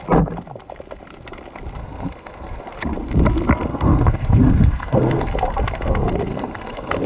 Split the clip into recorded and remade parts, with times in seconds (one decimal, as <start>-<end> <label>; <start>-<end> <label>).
0.0-1.8 recorded; 1.8-2.6 remade; 2.6-3.7 recorded; 3.7-5.3 remade; 5.3-6.3 recorded; 6.3-7.1 remade